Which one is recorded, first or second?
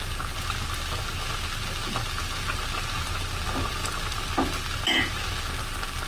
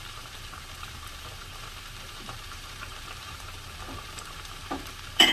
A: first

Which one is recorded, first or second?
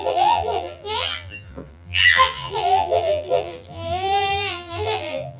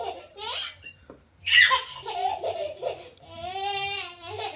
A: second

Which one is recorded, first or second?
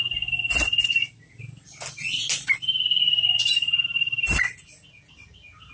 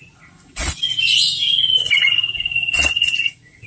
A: first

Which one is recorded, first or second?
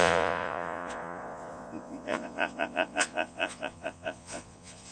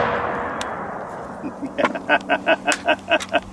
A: second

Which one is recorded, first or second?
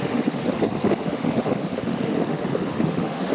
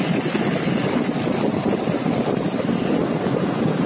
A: second